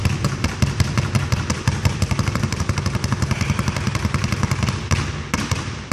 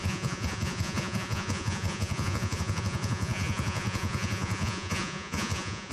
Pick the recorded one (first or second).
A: first